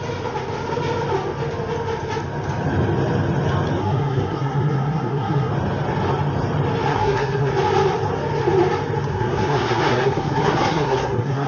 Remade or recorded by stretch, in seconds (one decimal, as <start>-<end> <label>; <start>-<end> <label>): 0.0-3.8 recorded; 3.8-5.5 remade; 5.5-6.9 recorded; 6.9-7.5 remade; 7.5-9.1 recorded; 9.1-11.5 remade